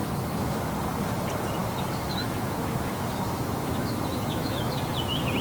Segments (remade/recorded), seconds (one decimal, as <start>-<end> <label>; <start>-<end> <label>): 0.0-0.7 remade; 0.7-1.6 recorded; 1.6-4.8 remade; 4.8-5.4 recorded